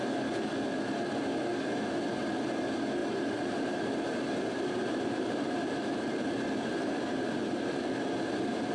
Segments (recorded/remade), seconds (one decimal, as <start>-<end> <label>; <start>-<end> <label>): 0.0-3.0 recorded; 3.0-7.8 remade; 7.8-8.7 recorded